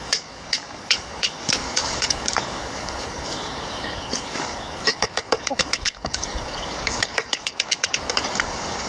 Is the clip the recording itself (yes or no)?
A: no